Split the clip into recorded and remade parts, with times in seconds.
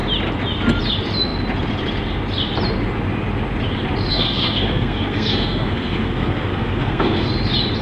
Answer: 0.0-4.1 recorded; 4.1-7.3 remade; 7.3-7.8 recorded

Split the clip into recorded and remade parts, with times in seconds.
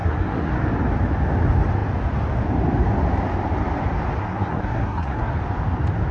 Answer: 0.0-0.5 remade; 0.5-4.2 recorded; 4.2-5.3 remade; 5.3-6.1 recorded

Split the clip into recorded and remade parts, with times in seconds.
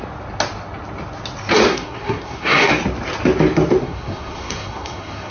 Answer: 0.0-1.7 recorded; 1.7-2.7 remade; 2.7-3.8 recorded; 3.8-5.3 remade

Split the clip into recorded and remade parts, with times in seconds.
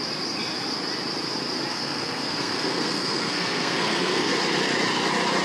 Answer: 0.0-1.7 recorded; 1.7-4.3 remade; 4.3-5.4 recorded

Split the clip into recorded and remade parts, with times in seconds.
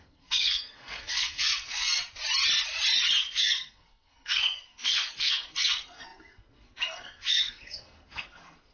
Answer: 0.0-2.0 remade; 2.0-3.2 recorded; 3.2-8.7 remade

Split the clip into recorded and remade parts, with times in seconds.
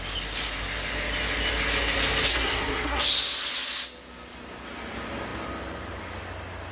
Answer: 0.0-2.3 recorded; 2.3-3.0 remade; 3.0-6.7 recorded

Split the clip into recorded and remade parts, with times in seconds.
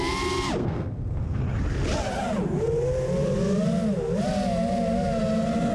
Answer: 0.0-0.6 recorded; 0.6-1.4 remade; 1.4-5.7 recorded